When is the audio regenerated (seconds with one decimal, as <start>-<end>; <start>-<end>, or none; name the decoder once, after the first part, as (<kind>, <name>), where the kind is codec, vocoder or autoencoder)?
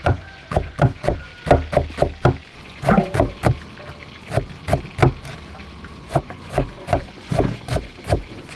0.0-1.3 (vocoder, Vocos); 2.4-3.4; 6.0-8.6